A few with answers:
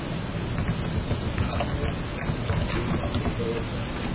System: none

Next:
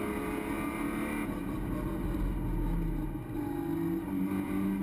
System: none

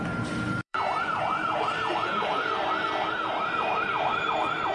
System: vocoder, BigVGAN v2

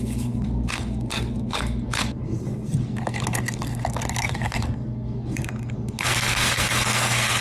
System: codec, SNAC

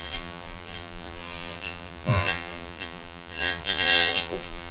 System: vocoder, BigVGAN v2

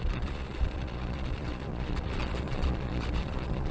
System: vocoder, Vocos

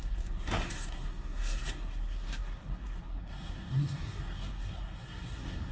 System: codec, SNAC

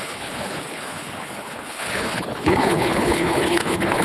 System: codec, HILCodec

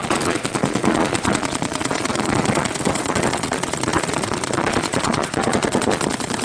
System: vocoder, Vocos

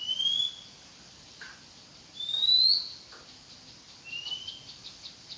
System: none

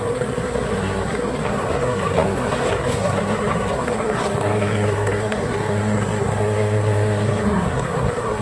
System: codec, SNAC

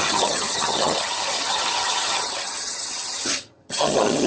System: vocoder, HiFi-GAN